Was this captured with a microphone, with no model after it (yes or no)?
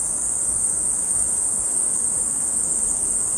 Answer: no